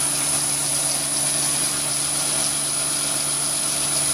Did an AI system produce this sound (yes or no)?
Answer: no